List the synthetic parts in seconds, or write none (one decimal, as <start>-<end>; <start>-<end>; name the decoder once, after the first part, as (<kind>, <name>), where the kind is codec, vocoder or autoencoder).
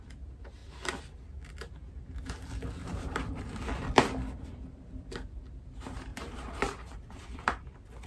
2.8-3.4 (vocoder, BigVGAN v2); 6.1-7.1